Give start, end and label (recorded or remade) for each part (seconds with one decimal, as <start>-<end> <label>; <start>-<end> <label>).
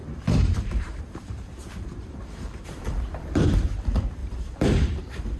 0.0-3.0 remade; 3.0-4.2 recorded; 4.2-5.0 remade; 5.0-5.4 recorded